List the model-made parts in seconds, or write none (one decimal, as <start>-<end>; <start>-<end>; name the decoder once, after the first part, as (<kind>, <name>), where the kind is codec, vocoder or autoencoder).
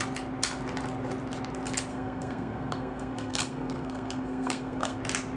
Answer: 1.9-5.0 (codec, SNAC)